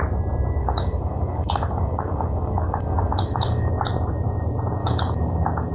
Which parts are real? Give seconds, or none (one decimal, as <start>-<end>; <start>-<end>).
0.0-0.6; 3.7-4.8